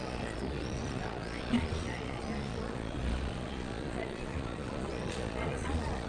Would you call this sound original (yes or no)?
no